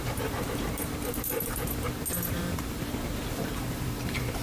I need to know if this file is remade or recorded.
remade